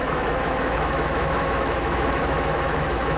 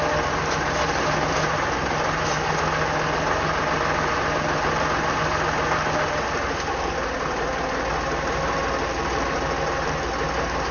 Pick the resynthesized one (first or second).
first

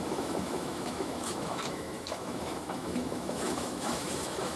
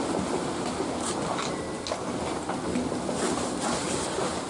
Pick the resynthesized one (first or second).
first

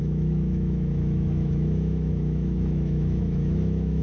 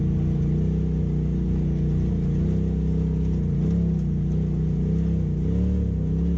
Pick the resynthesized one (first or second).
first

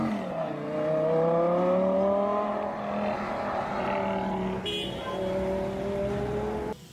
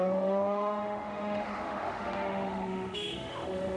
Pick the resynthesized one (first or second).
second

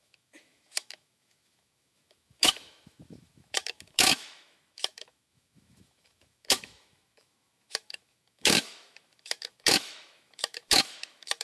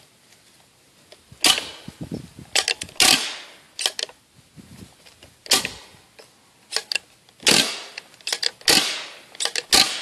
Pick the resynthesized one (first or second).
first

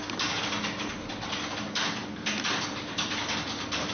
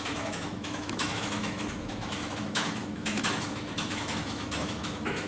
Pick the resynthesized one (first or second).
second